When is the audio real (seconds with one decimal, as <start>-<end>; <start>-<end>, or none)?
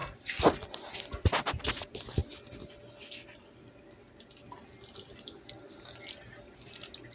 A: 0.0-7.1